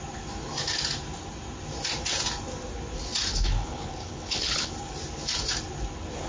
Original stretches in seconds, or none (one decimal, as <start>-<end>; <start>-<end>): 0.0-3.3; 4.7-6.3